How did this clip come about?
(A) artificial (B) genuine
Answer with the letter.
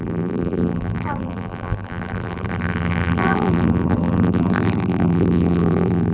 A